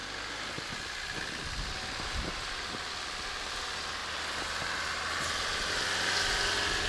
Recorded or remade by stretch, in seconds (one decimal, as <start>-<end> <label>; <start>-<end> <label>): 0.0-4.0 recorded; 4.0-4.5 remade; 4.5-6.9 recorded